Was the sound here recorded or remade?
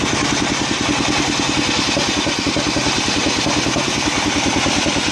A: recorded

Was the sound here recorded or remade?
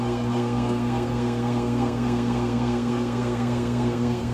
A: remade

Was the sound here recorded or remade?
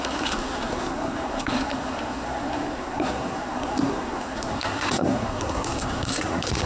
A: remade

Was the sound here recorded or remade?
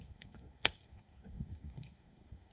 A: remade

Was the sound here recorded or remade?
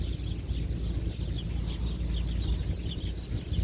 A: recorded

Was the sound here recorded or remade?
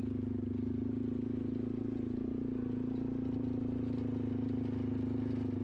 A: recorded